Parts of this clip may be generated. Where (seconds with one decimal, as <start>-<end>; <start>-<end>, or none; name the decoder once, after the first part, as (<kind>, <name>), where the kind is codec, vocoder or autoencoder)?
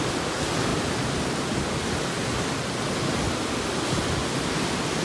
none